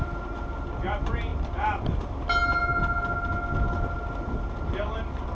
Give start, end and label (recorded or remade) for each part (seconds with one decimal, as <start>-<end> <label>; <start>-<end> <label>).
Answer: 0.0-5.3 recorded